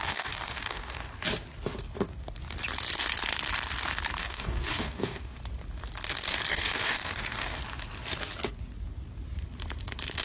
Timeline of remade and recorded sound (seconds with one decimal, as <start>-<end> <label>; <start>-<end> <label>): 0.0-1.0 remade; 1.0-4.2 recorded; 4.2-5.4 remade; 5.4-6.5 recorded; 6.5-7.6 remade; 7.6-10.2 recorded

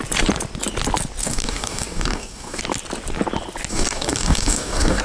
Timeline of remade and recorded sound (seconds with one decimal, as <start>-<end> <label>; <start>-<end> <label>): 0.0-1.2 recorded; 1.2-2.6 remade; 2.6-3.7 recorded; 3.7-5.0 remade

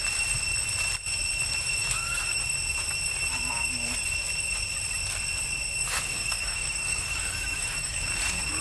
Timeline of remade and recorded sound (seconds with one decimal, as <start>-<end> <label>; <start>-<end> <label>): 0.0-1.8 recorded; 1.8-2.4 remade; 2.4-5.8 recorded; 5.8-8.0 remade; 8.0-8.6 recorded

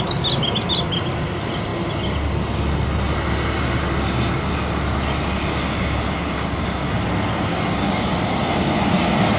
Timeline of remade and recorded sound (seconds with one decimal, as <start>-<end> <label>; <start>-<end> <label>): 0.0-5.5 recorded; 5.5-7.1 remade; 7.1-7.5 recorded; 7.5-8.8 remade; 8.8-9.4 recorded

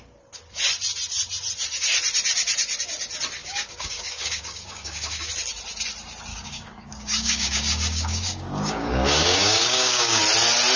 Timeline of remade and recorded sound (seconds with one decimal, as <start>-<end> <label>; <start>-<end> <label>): 0.0-3.4 recorded; 3.4-5.3 remade; 5.3-6.3 recorded; 6.3-10.2 remade; 10.2-10.8 recorded

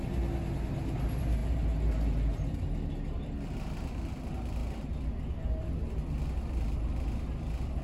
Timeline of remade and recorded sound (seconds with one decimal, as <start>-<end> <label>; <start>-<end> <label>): 0.0-7.8 recorded

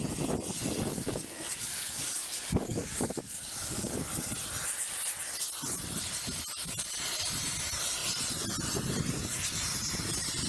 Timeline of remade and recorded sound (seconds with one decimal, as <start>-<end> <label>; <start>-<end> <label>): 0.0-0.9 recorded; 0.9-4.1 remade; 4.1-10.5 recorded

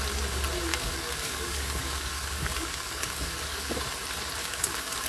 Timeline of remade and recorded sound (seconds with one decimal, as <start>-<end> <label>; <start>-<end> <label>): 0.0-0.7 recorded; 0.7-3.8 remade; 3.8-4.4 recorded; 4.4-5.1 remade